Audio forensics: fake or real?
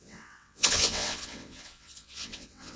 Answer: fake